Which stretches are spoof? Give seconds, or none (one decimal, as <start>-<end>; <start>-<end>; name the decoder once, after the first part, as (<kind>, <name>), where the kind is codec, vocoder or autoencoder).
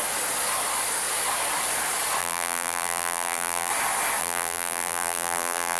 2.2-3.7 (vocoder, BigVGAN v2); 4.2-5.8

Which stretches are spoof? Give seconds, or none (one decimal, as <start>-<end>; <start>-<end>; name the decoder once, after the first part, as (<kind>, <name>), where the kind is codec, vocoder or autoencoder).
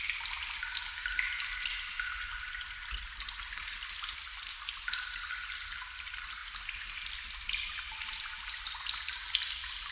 none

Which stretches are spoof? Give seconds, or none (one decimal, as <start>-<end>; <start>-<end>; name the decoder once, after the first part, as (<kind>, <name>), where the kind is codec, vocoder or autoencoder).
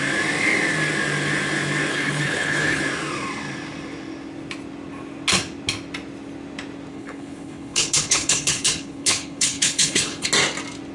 1.9-2.8 (codec, HILCodec); 6.9-10.3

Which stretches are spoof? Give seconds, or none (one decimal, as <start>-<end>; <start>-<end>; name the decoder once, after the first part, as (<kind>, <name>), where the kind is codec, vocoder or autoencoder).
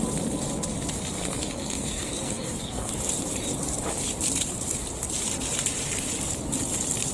1.2-2.9 (codec, SNAC)